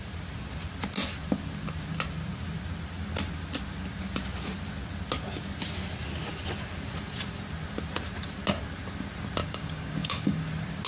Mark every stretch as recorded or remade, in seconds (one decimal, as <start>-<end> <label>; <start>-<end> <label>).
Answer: 0.0-9.4 recorded; 9.4-10.4 remade; 10.4-10.9 recorded